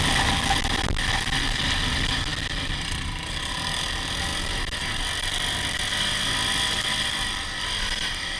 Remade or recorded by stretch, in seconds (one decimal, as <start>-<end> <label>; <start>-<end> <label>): 0.0-8.4 recorded